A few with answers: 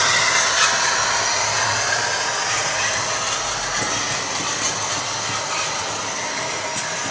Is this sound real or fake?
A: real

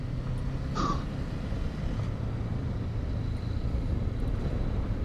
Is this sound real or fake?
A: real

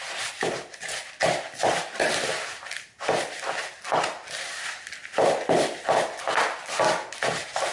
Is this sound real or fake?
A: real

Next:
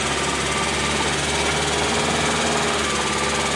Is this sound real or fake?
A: real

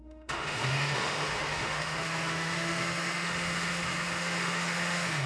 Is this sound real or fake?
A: fake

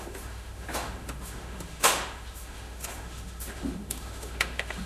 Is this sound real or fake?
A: fake